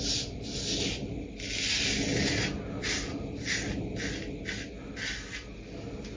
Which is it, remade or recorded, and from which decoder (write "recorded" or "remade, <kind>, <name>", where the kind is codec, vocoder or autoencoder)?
recorded